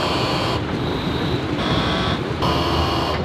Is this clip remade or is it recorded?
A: remade